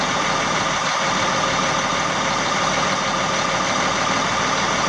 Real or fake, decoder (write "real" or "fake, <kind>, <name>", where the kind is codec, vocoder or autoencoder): real